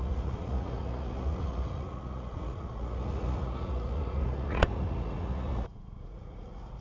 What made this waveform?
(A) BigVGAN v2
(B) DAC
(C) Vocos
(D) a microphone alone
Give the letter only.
C